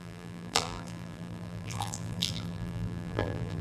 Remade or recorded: remade